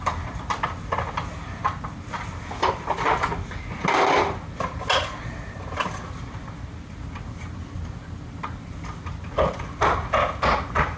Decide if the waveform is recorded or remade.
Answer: recorded